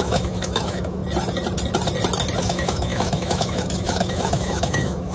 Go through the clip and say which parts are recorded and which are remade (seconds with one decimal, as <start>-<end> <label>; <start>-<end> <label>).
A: 0.0-1.0 remade; 1.0-2.4 recorded; 2.4-5.1 remade